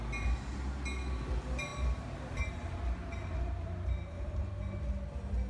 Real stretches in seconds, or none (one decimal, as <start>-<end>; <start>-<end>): 0.0-1.7; 4.4-5.5